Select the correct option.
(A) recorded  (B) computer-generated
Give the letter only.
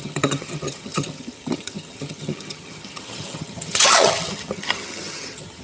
B